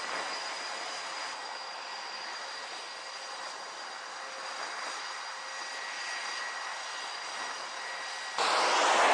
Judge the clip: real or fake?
real